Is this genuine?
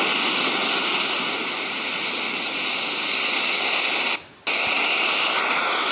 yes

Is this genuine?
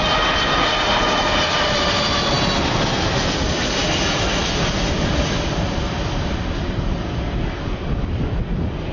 yes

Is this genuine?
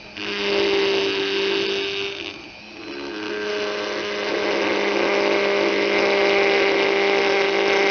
yes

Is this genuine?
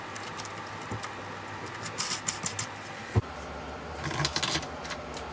yes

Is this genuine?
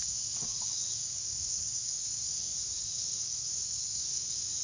no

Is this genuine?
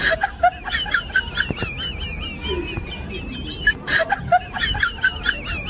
yes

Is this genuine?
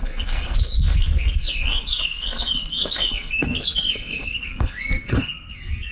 no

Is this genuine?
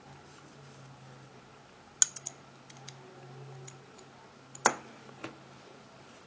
yes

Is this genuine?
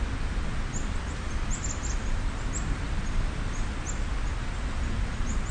yes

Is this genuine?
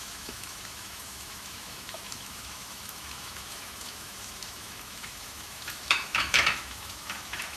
no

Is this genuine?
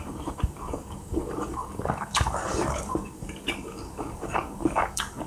no